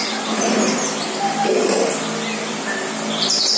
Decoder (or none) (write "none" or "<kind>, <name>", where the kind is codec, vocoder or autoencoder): none